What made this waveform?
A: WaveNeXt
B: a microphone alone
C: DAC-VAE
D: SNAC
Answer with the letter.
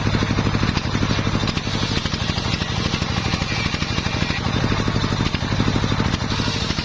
B